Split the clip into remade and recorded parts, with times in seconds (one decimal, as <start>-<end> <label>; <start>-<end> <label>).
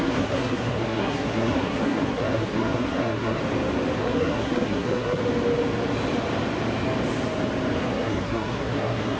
0.0-3.4 remade; 3.4-4.0 recorded; 4.0-5.2 remade; 5.2-7.8 recorded; 7.8-9.2 remade